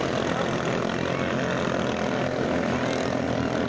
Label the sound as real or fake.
real